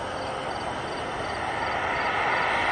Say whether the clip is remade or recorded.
recorded